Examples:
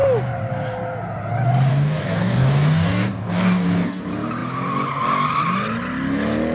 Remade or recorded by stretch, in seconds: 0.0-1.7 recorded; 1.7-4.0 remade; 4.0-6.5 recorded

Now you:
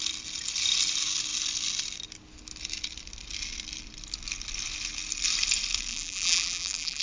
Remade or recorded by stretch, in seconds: 0.0-5.9 recorded; 5.9-7.0 remade

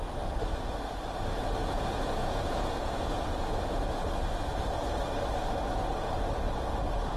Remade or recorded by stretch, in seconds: 0.0-1.6 recorded; 1.6-4.1 remade; 4.1-7.2 recorded